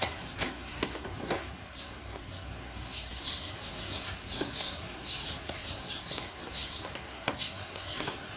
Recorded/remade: remade